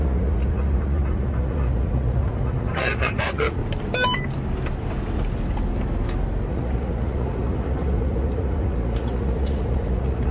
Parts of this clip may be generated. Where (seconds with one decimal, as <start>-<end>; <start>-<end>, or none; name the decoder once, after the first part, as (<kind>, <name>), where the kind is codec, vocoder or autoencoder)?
0.0-3.6 (vocoder, Vocos); 6.5-10.3